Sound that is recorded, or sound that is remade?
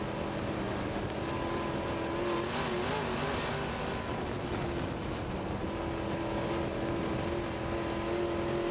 recorded